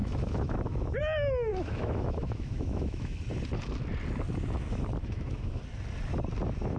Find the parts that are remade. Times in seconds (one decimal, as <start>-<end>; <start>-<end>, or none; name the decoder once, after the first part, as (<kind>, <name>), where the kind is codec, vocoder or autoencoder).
0.0-1.0 (autoencoder, DAC-VAE); 1.5-3.2; 5.0-5.6